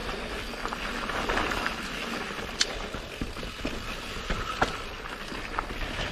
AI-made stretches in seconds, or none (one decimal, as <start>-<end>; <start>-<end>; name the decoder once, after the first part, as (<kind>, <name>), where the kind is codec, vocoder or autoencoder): 3.7-6.1 (vocoder, BigVGAN v2)